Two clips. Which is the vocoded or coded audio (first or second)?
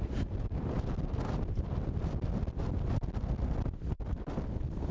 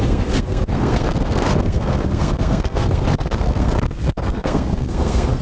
second